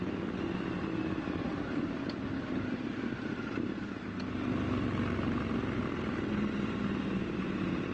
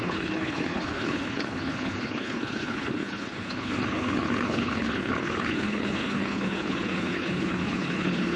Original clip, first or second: first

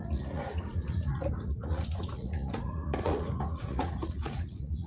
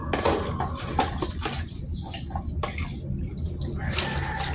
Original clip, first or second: second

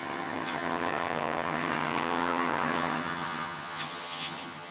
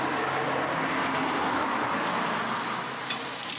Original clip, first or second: second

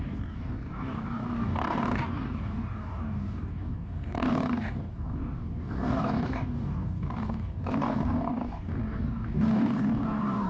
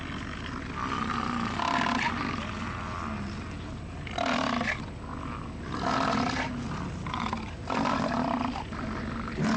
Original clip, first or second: second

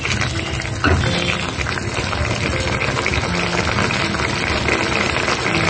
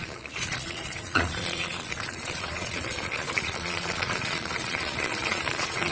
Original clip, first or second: first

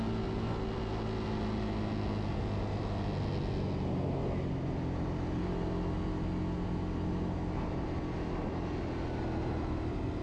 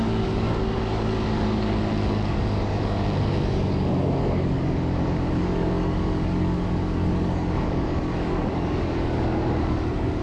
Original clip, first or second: first